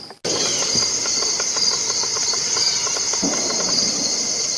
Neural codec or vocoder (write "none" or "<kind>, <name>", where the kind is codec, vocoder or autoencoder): none